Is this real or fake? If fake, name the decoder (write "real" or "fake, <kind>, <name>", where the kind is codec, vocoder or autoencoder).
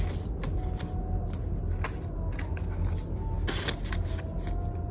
real